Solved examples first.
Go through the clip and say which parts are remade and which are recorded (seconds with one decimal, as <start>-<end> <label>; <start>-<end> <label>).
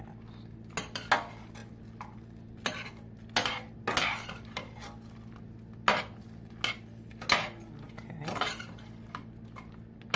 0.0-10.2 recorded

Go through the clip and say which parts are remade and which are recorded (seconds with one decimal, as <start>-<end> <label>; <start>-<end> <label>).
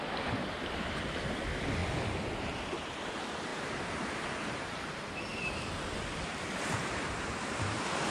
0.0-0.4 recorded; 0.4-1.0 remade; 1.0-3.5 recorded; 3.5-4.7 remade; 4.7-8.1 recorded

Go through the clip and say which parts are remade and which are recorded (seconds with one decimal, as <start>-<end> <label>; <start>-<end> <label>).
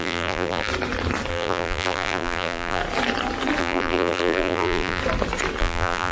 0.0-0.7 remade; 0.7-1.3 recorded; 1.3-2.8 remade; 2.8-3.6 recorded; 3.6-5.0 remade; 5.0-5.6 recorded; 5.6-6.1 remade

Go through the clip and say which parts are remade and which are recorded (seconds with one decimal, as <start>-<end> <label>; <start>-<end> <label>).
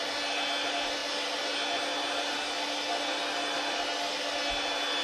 0.0-5.0 recorded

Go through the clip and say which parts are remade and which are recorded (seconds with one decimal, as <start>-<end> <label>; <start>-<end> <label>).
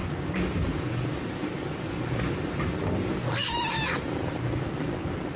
0.0-5.4 recorded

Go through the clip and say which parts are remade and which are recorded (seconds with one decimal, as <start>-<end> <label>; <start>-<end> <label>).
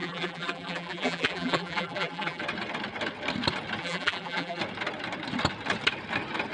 0.0-2.4 remade; 2.4-3.8 recorded; 3.8-4.6 remade; 4.6-6.5 recorded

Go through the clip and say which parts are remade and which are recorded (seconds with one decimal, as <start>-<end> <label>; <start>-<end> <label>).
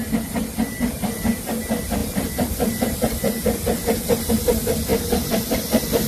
0.0-2.0 recorded; 2.0-4.3 remade; 4.3-6.1 recorded